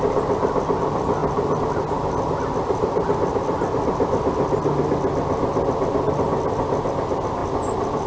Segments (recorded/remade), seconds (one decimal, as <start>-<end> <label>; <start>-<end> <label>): 0.0-8.1 recorded